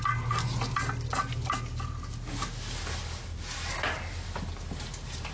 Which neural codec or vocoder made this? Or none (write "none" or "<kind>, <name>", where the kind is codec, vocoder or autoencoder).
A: none